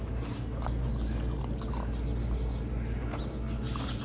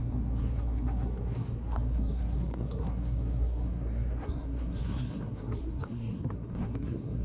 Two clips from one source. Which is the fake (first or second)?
second